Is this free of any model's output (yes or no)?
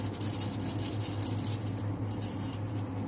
yes